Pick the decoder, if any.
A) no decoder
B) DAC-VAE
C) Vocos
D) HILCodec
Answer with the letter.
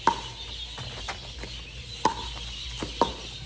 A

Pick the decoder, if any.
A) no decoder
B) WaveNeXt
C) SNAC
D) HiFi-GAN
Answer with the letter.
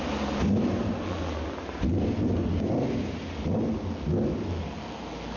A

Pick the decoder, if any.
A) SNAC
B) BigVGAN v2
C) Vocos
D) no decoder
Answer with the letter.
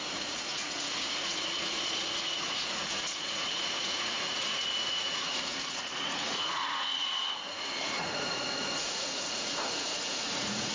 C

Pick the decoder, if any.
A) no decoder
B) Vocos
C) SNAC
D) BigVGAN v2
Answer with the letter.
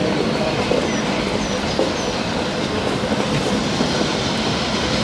A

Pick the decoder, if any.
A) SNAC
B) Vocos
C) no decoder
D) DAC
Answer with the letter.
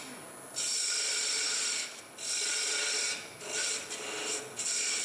C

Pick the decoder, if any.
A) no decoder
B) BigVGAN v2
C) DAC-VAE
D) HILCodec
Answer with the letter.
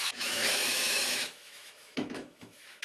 C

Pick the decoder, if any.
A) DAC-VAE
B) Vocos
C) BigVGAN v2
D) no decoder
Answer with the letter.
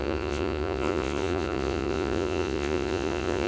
B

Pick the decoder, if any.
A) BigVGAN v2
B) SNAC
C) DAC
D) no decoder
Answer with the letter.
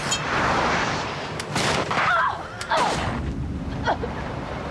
D